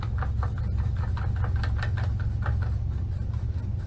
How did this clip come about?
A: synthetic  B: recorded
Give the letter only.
B